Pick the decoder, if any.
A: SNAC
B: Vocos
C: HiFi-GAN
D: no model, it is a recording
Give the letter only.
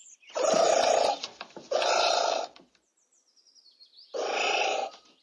D